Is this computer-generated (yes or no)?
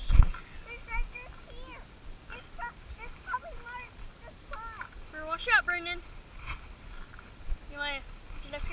no